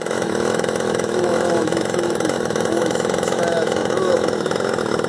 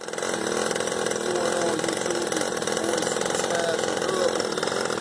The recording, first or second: second